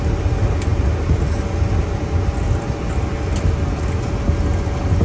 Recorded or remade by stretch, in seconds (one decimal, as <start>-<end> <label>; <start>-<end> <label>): 0.0-5.0 recorded